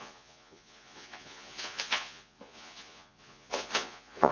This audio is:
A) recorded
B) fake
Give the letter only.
B